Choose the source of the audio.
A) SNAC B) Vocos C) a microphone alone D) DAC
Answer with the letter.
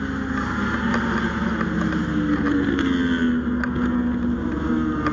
C